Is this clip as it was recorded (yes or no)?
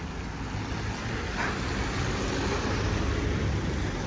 yes